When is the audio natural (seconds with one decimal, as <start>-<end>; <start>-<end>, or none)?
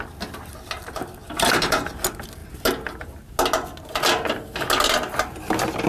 0.0-1.2; 1.9-5.9